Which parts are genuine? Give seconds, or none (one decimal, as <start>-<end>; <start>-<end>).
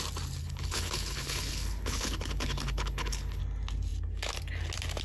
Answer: 0.0-0.4; 3.4-5.0